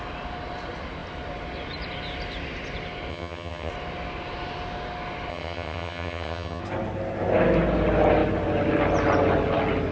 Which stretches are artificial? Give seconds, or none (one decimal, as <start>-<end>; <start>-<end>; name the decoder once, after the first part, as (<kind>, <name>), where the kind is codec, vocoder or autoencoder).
3.1-3.7 (vocoder, HiFi-GAN); 5.3-6.6